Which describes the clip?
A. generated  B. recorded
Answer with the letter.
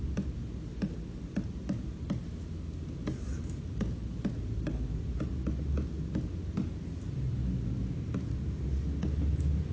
B